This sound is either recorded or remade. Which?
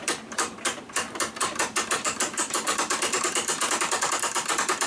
remade